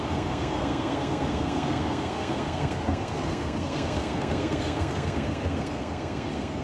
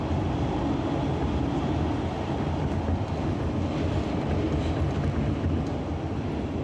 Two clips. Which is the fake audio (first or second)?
first